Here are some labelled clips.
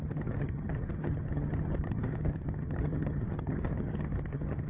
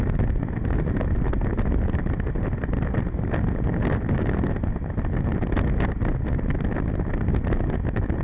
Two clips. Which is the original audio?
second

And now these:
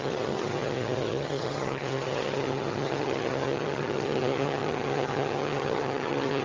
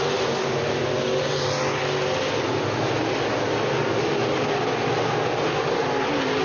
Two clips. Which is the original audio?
second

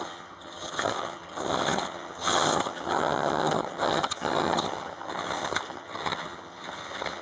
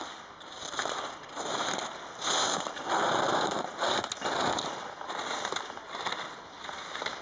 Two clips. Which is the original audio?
second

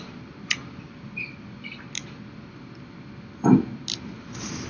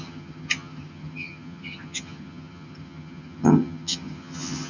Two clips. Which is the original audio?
first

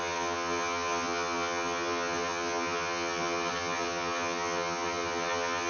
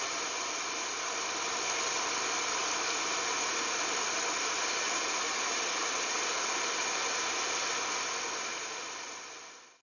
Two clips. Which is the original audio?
second